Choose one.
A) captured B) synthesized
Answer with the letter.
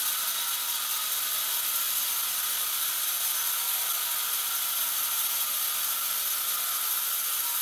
A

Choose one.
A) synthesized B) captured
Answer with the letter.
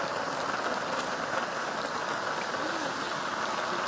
B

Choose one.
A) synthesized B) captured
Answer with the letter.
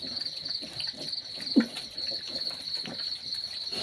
B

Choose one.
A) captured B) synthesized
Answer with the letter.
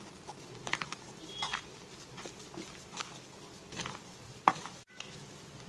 A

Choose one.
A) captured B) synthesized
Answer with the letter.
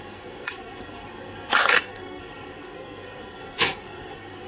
B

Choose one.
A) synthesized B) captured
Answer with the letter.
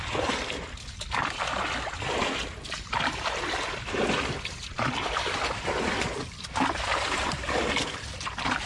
A